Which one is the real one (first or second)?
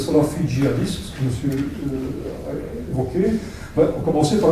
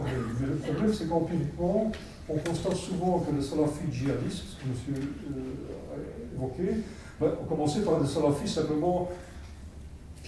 second